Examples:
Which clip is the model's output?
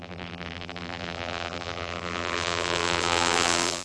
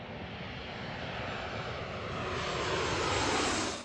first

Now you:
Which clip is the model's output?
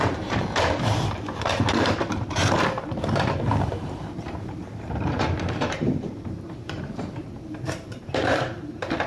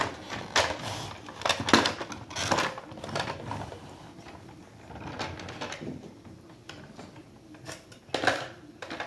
first